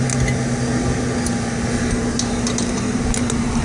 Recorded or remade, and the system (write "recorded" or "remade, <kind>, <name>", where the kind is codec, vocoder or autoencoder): recorded